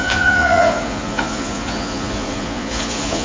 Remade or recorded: remade